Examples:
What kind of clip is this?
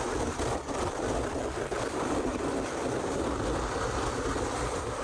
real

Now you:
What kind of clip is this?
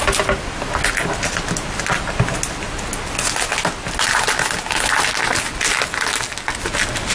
real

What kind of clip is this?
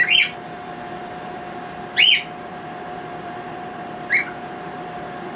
fake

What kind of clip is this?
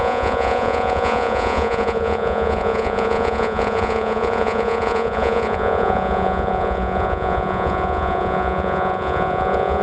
fake